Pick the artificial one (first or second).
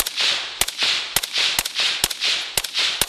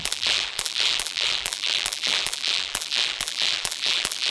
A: second